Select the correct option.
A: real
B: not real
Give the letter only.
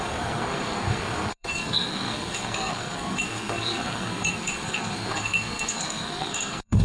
B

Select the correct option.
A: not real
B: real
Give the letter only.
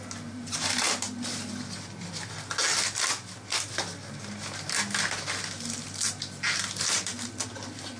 B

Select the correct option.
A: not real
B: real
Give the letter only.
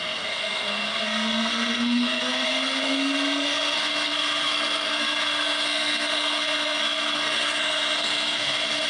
A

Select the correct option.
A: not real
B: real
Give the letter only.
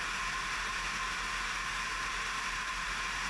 B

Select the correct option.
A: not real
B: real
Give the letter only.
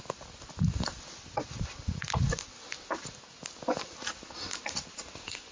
B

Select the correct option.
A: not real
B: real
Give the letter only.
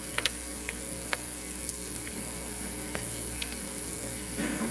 A